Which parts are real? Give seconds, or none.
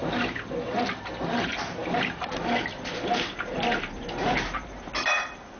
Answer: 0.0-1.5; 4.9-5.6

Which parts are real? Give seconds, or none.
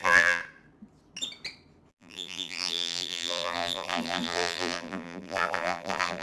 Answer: 0.4-1.9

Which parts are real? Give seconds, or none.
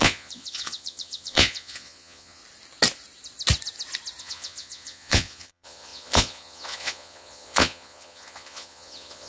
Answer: 2.4-4.2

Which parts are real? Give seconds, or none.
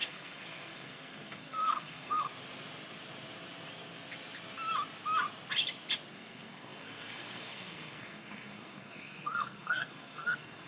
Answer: 2.3-6.1